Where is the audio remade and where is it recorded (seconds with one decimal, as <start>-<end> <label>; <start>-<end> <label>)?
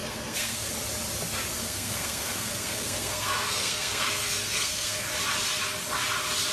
0.0-0.7 remade; 0.7-1.5 recorded; 1.5-5.1 remade; 5.1-6.5 recorded